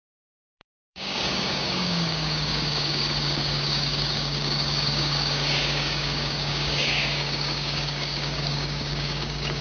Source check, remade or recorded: remade